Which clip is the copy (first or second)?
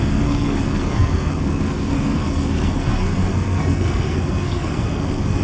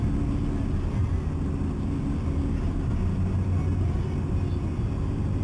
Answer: first